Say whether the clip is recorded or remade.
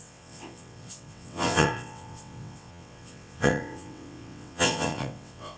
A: remade